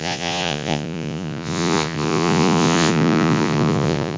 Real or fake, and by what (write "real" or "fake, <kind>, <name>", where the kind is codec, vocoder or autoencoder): fake, vocoder, Vocos